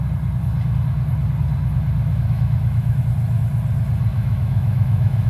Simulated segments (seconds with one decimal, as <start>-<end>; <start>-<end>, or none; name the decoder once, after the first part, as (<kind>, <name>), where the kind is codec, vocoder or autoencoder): 2.1-3.0 (autoencoder, DAC-VAE); 4.1-5.3